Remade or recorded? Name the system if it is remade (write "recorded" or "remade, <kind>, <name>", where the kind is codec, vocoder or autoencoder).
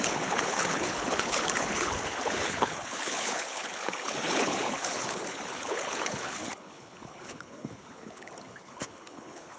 remade, codec, HILCodec